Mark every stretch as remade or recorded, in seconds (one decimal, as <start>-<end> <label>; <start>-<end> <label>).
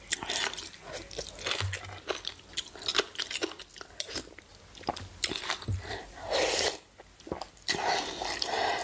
0.0-8.8 recorded